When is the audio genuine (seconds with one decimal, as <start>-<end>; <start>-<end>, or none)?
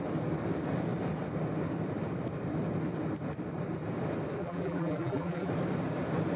0.0-4.4; 5.5-6.4